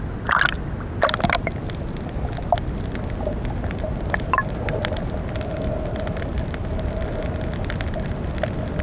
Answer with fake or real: real